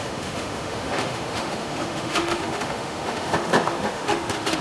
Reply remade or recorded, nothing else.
remade